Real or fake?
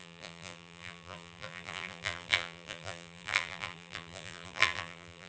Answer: fake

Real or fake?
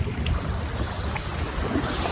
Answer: real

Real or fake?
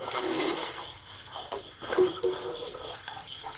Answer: fake